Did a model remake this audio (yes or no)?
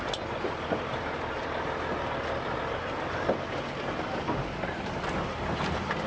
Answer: no